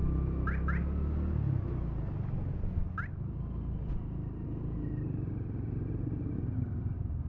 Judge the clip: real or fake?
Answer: real